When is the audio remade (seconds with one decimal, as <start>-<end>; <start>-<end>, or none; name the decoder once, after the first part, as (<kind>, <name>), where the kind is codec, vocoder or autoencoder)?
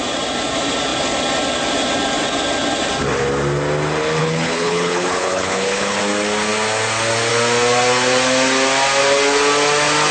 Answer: 4.2-6.0 (codec, HILCodec)